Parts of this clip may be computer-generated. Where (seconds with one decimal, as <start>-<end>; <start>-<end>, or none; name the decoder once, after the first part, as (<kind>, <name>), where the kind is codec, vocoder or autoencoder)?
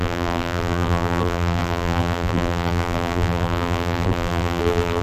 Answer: 0.0-5.0 (vocoder, BigVGAN v2)